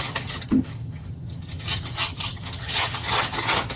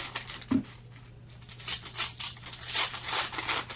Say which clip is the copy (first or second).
first